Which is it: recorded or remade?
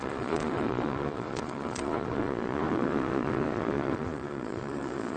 remade